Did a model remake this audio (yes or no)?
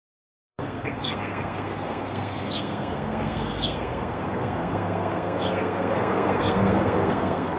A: yes